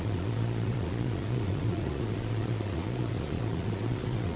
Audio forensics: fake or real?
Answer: fake